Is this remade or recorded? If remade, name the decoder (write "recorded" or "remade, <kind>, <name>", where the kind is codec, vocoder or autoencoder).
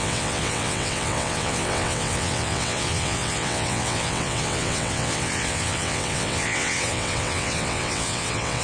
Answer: remade, vocoder, WaveNeXt